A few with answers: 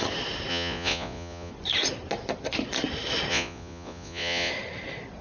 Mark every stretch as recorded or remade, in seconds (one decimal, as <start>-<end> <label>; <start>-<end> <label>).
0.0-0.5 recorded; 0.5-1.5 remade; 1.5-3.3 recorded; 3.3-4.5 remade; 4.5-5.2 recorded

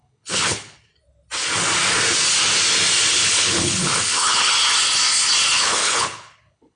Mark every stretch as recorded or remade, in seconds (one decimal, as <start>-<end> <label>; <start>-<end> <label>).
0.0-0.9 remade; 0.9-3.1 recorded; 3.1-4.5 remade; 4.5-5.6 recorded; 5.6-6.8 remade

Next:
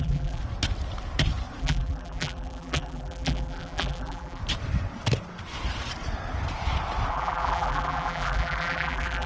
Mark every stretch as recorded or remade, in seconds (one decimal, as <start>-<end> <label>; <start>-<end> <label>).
0.0-0.4 remade; 0.4-1.6 recorded; 1.6-4.4 remade; 4.4-7.1 recorded; 7.1-9.3 remade

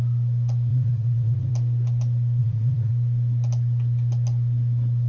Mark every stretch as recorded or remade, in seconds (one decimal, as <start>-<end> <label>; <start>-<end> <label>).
0.0-0.7 recorded; 0.7-1.5 remade; 1.5-2.4 recorded; 2.4-2.9 remade; 2.9-5.1 recorded

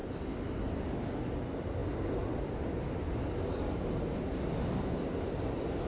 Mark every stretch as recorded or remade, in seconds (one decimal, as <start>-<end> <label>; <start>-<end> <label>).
0.0-5.9 recorded

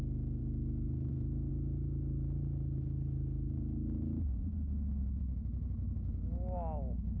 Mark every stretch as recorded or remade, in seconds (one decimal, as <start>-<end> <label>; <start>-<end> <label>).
0.0-1.5 remade; 1.5-5.2 recorded; 5.2-7.2 remade